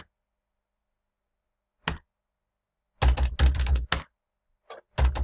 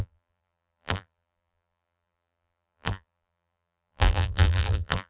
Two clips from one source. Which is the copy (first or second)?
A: second